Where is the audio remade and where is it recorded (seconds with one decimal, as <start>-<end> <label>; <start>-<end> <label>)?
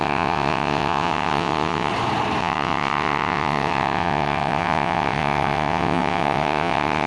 0.0-1.9 remade; 1.9-2.4 recorded; 2.4-7.1 remade